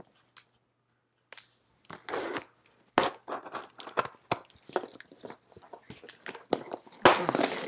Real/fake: real